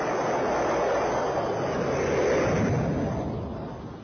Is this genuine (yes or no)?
yes